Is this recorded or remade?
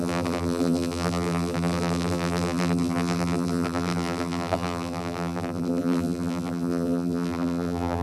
remade